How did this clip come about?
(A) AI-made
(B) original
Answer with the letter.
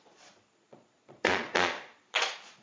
A